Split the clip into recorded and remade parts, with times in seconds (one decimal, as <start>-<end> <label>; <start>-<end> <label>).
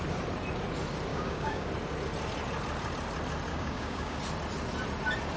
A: 0.0-1.1 recorded; 1.1-1.7 remade; 1.7-3.5 recorded; 3.5-4.2 remade; 4.2-5.4 recorded